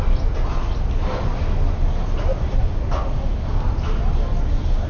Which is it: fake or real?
real